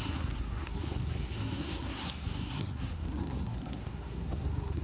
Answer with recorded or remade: remade